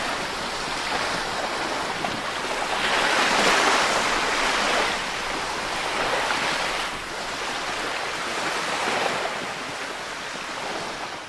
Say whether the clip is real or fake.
real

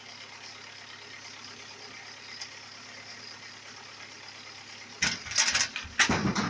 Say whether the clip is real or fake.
real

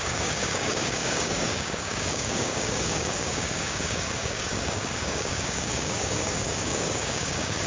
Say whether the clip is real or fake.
fake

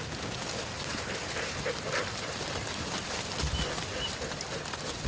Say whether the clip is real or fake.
real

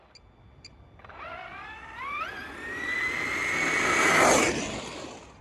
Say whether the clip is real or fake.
real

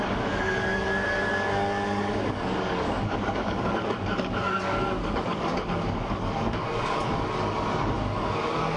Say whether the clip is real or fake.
fake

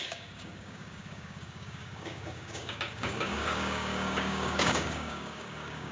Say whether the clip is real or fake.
fake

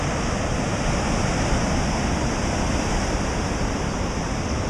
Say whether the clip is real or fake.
real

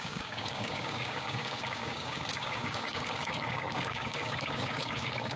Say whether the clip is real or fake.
fake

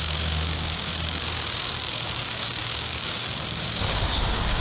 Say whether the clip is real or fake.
fake